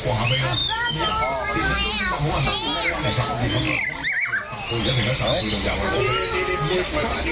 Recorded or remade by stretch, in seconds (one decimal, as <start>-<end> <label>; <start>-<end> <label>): 0.0-7.3 recorded